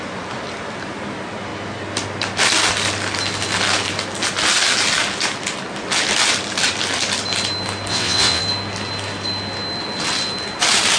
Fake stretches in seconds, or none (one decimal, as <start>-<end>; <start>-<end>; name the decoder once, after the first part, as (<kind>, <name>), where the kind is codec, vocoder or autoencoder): 7.9-8.4 (vocoder, WaveNeXt)